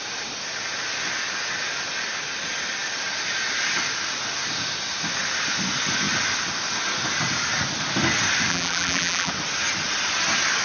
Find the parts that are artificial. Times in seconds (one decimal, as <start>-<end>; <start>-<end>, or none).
8.5-9.3